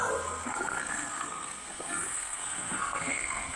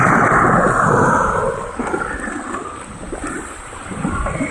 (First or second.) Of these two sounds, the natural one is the second